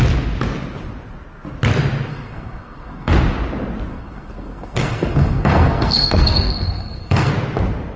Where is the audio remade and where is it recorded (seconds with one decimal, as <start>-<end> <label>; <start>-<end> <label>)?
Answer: 0.0-2.1 recorded; 2.1-3.1 remade; 3.1-3.9 recorded; 3.9-7.3 remade; 7.3-8.0 recorded